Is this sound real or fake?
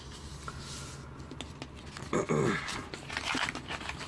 real